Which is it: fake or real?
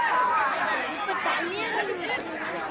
real